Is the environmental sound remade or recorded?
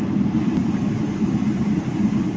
recorded